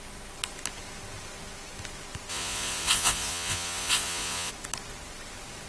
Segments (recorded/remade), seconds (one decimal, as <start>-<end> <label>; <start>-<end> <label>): 0.0-2.3 recorded; 2.3-4.5 remade; 4.5-5.7 recorded